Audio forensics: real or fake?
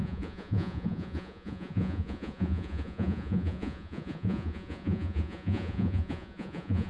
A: fake